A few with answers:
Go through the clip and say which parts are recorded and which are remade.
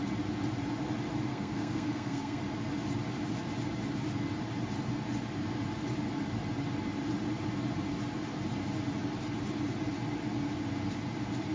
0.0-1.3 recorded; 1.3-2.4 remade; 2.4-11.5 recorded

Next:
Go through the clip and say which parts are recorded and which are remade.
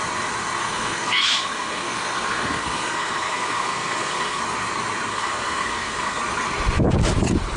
0.0-0.6 recorded; 0.6-4.4 remade; 4.4-5.1 recorded; 5.1-6.2 remade; 6.2-7.6 recorded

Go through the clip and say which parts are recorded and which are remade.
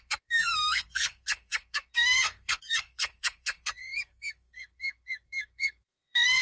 0.0-6.4 remade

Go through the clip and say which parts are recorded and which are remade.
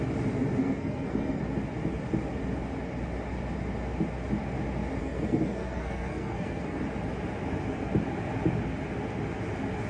0.0-0.6 recorded; 0.6-1.4 remade; 1.4-5.0 recorded; 5.0-6.8 remade; 6.8-9.9 recorded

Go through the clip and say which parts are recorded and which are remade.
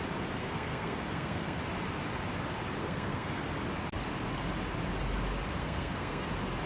0.0-0.4 recorded; 0.4-1.6 remade; 1.6-2.8 recorded; 2.8-3.4 remade; 3.4-5.6 recorded; 5.6-6.3 remade; 6.3-6.7 recorded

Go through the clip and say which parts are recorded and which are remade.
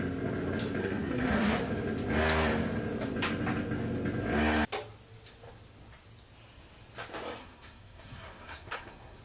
0.0-0.8 recorded; 0.8-1.6 remade; 1.6-7.4 recorded; 7.4-9.2 remade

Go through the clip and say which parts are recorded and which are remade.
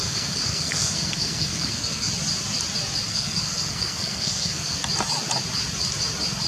0.0-2.1 remade; 2.1-3.1 recorded; 3.1-4.8 remade; 4.8-6.5 recorded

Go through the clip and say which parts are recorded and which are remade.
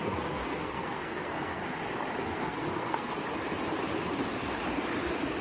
0.0-1.6 remade; 1.6-2.2 recorded; 2.2-3.1 remade; 3.1-5.4 recorded